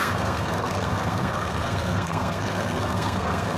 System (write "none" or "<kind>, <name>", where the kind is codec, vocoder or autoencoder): codec, SNAC